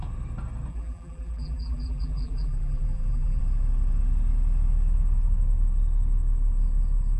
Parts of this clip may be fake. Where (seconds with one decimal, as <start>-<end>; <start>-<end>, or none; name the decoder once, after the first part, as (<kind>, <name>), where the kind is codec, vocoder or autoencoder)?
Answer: 0.7-3.4 (vocoder, BigVGAN v2)